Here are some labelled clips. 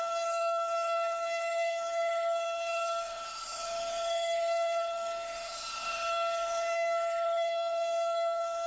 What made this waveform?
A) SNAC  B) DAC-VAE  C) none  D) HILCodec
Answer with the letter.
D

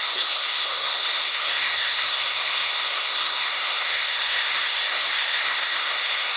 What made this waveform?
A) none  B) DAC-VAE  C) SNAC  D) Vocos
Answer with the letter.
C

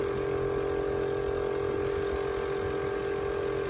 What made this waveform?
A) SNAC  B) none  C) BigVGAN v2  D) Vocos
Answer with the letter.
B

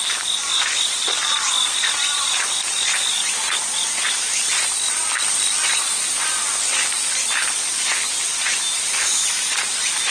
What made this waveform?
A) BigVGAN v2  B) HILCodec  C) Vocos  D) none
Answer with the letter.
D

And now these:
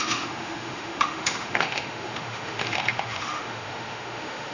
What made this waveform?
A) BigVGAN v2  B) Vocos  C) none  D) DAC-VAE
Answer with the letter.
D